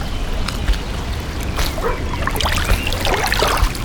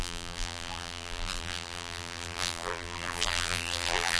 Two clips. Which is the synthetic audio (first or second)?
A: second